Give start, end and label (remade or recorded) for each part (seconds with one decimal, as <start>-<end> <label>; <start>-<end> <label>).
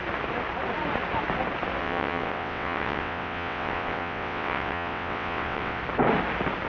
0.0-1.8 recorded; 1.8-5.8 remade; 5.8-6.7 recorded